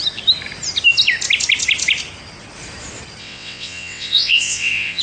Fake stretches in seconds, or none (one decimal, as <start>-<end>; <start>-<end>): 3.2-5.0